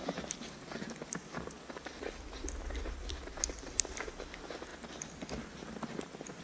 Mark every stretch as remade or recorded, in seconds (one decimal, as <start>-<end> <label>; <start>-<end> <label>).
0.0-4.7 remade; 4.7-6.4 recorded